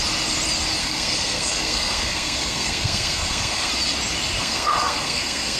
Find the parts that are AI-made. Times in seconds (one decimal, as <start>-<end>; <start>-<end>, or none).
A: 0.8-3.7; 4.4-5.6